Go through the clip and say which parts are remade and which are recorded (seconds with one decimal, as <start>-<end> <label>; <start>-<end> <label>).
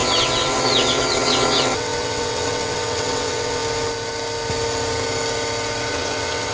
0.0-3.6 remade; 3.6-5.9 recorded; 5.9-6.5 remade